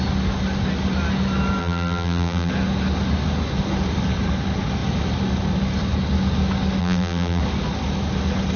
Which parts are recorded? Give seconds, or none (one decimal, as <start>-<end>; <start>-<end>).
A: 0.0-1.6; 2.5-6.8; 7.4-8.6